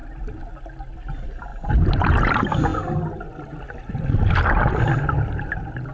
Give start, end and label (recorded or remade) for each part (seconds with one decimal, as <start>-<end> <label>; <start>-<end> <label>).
0.0-1.5 recorded; 1.5-2.3 remade; 2.3-5.9 recorded